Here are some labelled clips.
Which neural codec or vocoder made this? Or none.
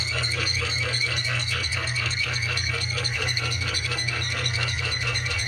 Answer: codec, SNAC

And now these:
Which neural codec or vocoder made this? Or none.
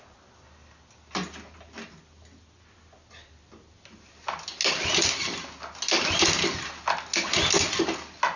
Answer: none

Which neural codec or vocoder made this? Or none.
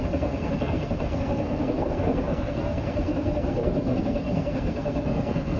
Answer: codec, SNAC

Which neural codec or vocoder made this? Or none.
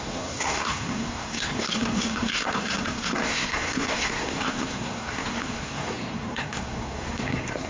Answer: codec, SNAC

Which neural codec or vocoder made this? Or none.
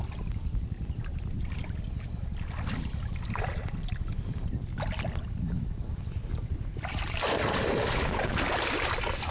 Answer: none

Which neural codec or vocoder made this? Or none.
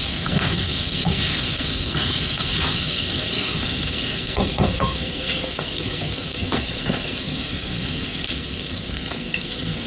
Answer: codec, SNAC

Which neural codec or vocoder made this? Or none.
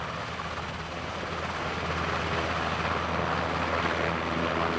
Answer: none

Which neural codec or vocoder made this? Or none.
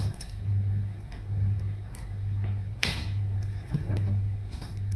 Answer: codec, SNAC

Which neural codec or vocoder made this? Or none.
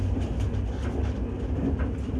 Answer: none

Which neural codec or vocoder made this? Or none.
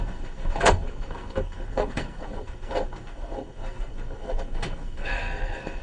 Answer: codec, SNAC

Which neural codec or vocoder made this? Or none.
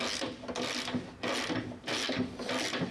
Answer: none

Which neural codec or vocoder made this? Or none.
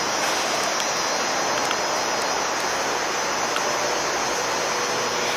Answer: none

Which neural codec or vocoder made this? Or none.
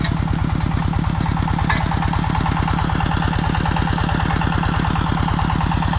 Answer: none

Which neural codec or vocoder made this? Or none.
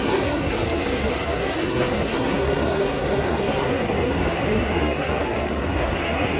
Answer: codec, SNAC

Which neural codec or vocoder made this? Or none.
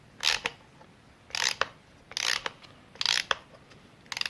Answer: none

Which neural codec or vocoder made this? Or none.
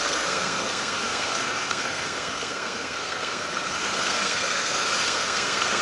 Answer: codec, SNAC